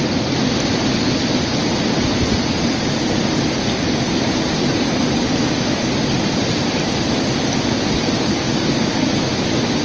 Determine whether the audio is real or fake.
real